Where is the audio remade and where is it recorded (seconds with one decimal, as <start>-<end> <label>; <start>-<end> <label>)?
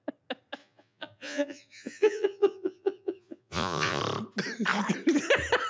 0.0-0.6 recorded; 0.6-4.0 remade; 4.0-5.7 recorded